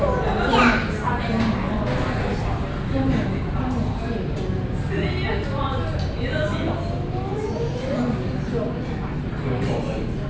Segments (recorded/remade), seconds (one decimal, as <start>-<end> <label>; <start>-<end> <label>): 0.0-7.3 recorded; 7.3-8.8 remade; 8.8-10.3 recorded